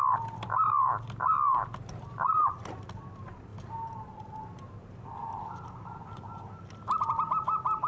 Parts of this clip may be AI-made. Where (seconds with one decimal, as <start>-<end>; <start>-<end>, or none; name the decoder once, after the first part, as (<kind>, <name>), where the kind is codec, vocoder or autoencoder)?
none